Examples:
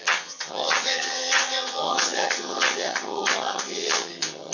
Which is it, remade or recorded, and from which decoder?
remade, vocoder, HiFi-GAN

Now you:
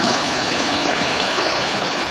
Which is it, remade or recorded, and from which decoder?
remade, codec, HILCodec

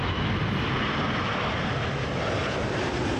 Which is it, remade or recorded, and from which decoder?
recorded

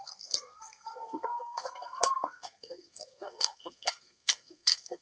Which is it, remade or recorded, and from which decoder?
remade, codec, SNAC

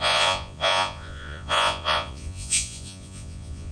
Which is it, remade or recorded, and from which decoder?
remade, vocoder, Vocos